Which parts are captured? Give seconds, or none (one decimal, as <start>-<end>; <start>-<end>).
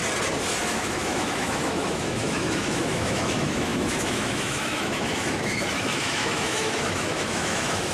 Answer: 0.0-0.6